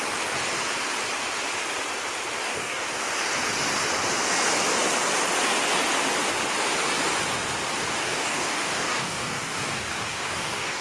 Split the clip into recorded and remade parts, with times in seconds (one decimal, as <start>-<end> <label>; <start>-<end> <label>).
0.0-2.4 recorded; 2.4-3.0 remade; 3.0-8.0 recorded; 8.0-10.8 remade